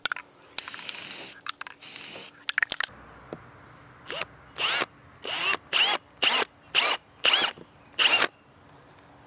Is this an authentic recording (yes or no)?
yes